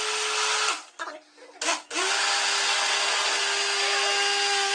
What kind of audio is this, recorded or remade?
recorded